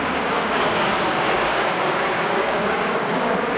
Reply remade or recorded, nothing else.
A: remade